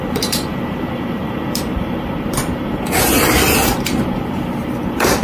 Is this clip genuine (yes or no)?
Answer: no